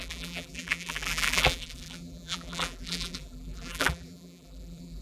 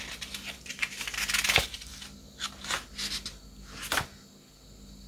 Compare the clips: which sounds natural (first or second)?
second